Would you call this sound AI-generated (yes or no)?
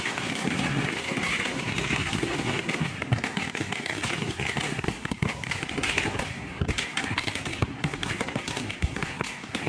yes